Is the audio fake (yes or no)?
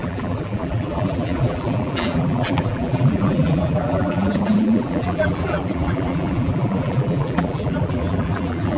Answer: yes